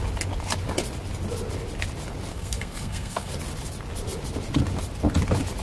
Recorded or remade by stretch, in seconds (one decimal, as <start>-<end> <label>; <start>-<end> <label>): 0.0-2.3 recorded; 2.3-3.3 remade; 3.3-5.6 recorded